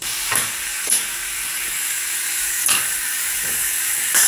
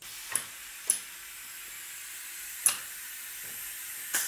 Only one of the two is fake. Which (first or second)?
first